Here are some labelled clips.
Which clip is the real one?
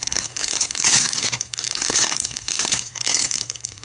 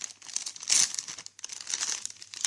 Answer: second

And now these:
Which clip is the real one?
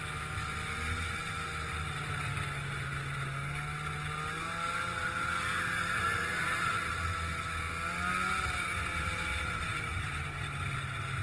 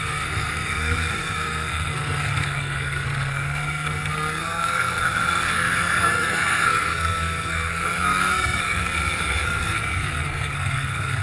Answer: first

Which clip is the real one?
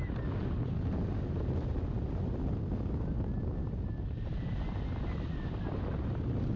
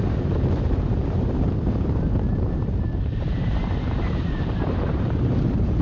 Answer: first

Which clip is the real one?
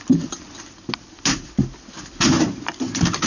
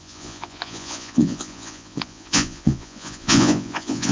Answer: first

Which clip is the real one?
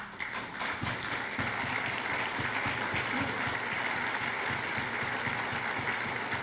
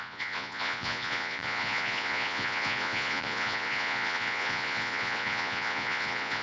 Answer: first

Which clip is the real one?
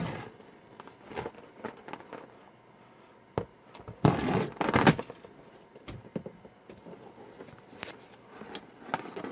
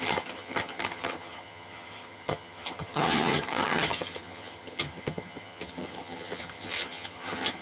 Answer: first